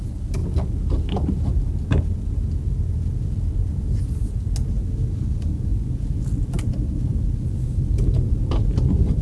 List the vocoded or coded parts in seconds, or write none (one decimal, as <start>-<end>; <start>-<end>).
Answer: none